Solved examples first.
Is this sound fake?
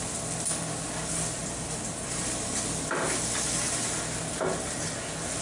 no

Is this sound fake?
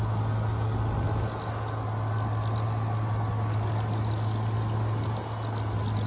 no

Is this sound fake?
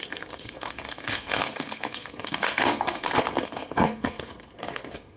yes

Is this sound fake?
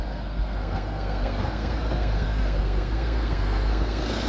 yes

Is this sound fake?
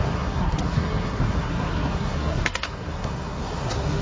yes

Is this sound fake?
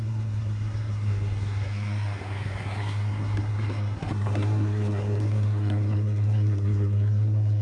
yes